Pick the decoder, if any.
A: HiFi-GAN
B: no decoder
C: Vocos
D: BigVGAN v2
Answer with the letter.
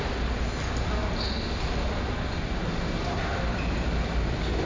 B